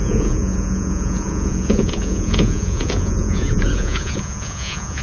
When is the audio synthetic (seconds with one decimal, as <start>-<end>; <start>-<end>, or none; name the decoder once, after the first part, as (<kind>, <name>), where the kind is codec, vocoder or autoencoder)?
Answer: 0.0-5.0 (vocoder, Vocos)